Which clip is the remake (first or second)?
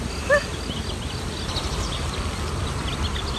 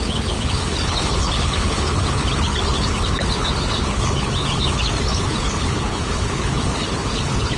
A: second